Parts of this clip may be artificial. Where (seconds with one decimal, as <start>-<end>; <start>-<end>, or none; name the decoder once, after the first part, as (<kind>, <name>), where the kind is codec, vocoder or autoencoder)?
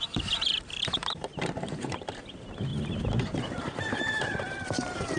0.0-2.7 (vocoder, BigVGAN v2); 3.2-5.2